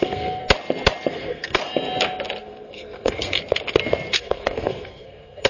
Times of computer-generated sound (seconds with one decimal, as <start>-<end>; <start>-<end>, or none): 0.0-0.4; 1.1-1.6; 2.4-3.4; 4.1-5.5